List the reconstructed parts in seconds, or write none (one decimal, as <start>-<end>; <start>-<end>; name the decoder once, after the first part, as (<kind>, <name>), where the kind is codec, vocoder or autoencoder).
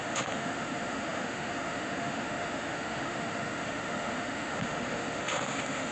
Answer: 0.0-5.9 (autoencoder, DAC-VAE)